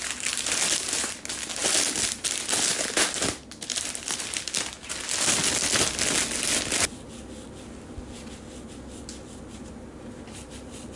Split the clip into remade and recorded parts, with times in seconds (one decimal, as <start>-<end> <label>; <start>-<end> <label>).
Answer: 0.0-11.0 recorded